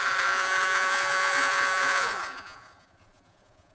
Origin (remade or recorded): remade